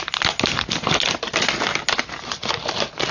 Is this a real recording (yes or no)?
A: yes